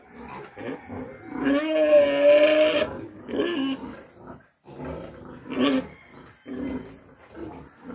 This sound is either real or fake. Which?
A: real